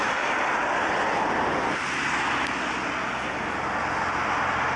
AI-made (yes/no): no